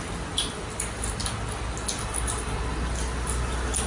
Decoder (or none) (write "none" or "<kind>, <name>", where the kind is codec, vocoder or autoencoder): none